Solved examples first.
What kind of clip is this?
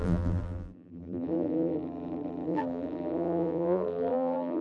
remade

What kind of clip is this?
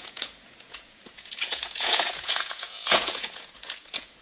remade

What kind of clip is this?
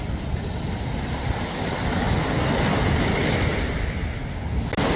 recorded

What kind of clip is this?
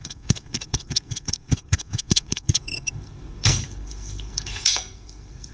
remade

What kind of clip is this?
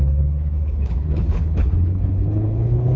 remade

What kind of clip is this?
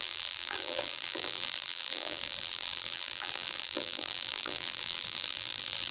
remade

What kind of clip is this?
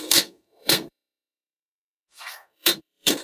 remade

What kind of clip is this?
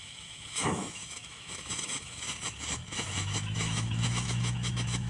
remade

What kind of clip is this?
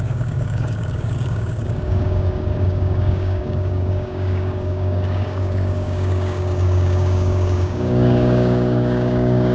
remade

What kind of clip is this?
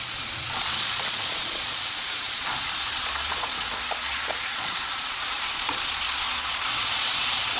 remade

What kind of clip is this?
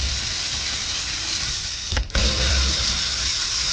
remade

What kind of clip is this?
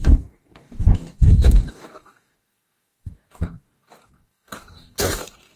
remade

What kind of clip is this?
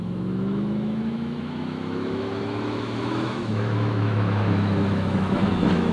remade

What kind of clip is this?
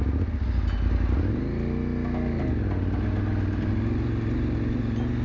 recorded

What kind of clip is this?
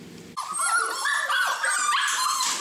recorded